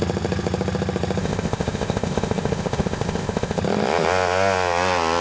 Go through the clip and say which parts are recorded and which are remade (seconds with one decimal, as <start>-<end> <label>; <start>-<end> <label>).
0.0-1.2 recorded; 1.2-3.6 remade; 3.6-5.2 recorded